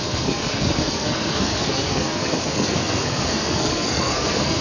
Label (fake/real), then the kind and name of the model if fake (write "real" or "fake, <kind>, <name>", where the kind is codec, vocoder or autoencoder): fake, codec, SNAC